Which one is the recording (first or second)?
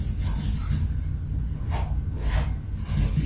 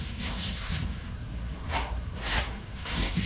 first